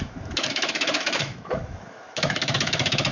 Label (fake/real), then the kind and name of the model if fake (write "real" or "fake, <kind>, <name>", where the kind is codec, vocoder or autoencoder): fake, autoencoder, DAC-VAE